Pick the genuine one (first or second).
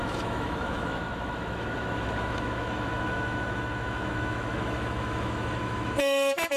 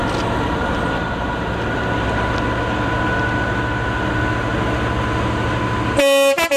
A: second